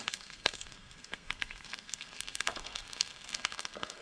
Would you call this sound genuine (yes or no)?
no